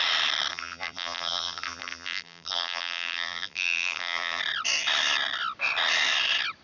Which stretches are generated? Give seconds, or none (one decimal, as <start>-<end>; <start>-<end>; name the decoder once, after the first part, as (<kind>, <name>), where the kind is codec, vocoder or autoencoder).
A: 0.5-4.4 (vocoder, BigVGAN v2)